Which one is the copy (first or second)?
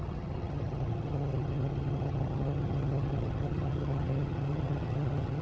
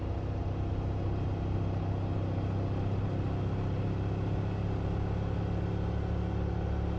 first